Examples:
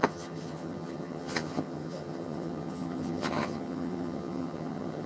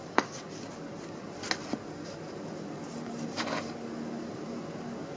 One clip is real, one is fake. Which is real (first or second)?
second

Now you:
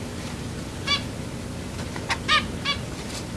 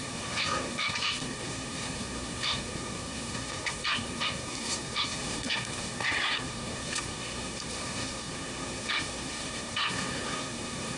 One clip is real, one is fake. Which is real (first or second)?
first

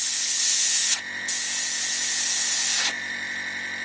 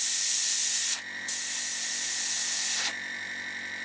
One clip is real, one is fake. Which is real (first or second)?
first